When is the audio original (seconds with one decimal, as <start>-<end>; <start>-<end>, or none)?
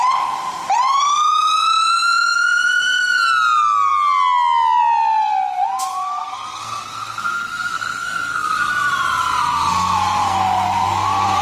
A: 0.0-5.9; 8.7-9.2